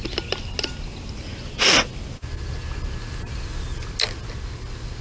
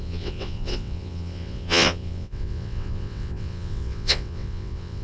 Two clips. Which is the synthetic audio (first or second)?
second